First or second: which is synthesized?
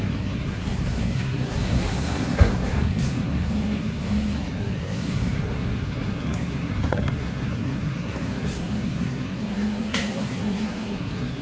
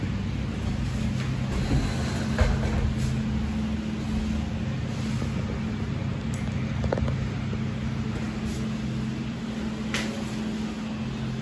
first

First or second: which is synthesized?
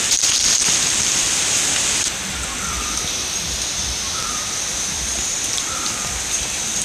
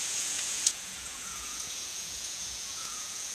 second